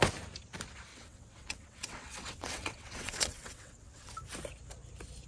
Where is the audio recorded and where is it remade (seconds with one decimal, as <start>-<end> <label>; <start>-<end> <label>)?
0.0-0.9 recorded; 0.9-4.1 remade; 4.1-5.3 recorded